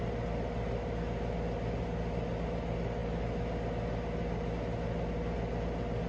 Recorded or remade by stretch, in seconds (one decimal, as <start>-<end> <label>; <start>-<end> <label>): 0.0-6.1 recorded

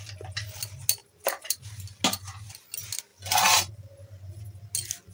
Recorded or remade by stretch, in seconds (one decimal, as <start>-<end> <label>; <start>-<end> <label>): 0.0-1.0 recorded; 1.0-1.6 remade; 1.6-5.1 recorded